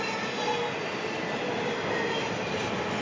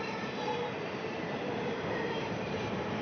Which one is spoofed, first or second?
second